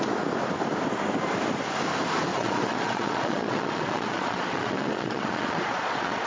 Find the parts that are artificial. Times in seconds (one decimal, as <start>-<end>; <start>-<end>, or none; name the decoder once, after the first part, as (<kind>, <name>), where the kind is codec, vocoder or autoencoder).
2.3-6.3 (vocoder, Vocos)

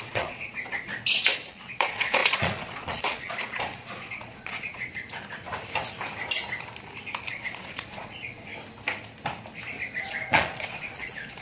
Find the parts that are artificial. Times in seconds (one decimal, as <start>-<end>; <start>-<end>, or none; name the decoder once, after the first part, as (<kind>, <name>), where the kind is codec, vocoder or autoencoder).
0.0-0.9 (vocoder, Vocos); 1.5-4.9; 7.3-8.5; 10.0-11.4

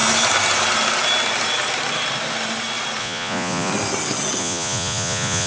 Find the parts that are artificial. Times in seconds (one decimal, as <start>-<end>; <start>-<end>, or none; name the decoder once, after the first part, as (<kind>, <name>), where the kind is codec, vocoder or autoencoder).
3.0-3.7 (vocoder, Vocos); 4.4-5.5

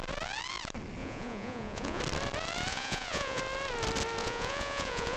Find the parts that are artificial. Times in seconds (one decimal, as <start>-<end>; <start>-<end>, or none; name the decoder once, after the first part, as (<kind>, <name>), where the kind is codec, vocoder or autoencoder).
1.0-2.0 (vocoder, Vocos); 2.7-3.4; 4.2-5.2

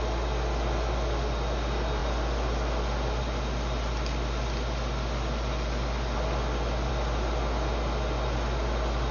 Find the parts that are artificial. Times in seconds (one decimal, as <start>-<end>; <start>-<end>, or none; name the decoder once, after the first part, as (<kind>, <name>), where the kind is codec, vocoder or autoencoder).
none